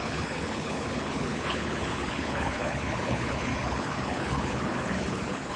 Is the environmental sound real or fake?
fake